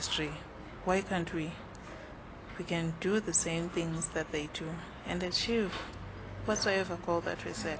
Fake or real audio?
real